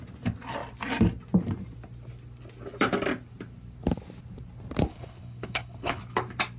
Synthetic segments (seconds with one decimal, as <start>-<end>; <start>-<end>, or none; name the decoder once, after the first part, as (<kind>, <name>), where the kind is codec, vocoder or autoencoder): 4.9-6.0 (codec, HILCodec)